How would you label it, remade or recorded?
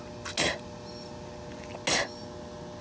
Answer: recorded